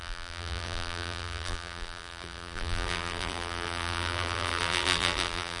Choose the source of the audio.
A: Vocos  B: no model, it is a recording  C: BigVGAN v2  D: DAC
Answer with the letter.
C